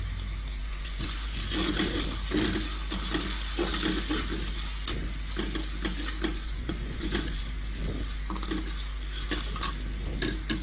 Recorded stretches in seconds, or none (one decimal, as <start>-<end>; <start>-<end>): 0.0-0.6; 1.4-6.3; 7.4-10.6